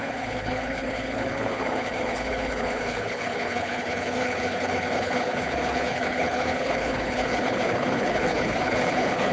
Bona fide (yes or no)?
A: no